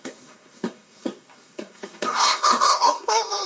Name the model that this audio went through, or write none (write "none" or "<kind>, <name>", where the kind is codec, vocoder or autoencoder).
codec, SNAC